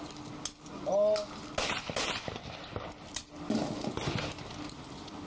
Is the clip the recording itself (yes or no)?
yes